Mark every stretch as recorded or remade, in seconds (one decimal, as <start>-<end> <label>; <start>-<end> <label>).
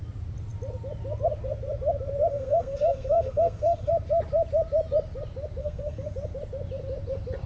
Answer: 0.0-2.3 recorded; 2.3-3.9 remade; 3.9-5.6 recorded; 5.6-6.1 remade; 6.1-7.5 recorded